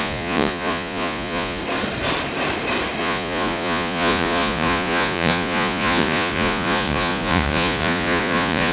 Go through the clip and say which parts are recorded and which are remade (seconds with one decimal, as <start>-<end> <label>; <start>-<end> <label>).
0.0-1.6 remade; 1.6-3.0 recorded; 3.0-8.7 remade